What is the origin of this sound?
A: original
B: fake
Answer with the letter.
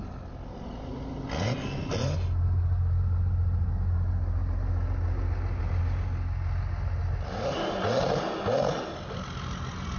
A